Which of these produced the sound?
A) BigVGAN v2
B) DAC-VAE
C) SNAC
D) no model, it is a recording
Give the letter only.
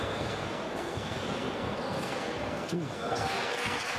C